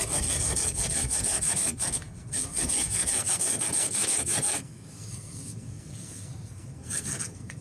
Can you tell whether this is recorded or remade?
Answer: remade